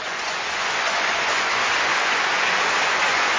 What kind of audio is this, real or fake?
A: fake